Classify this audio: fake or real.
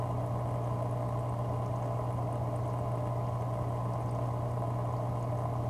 real